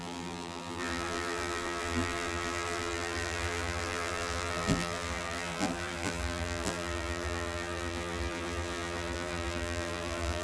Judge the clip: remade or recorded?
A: remade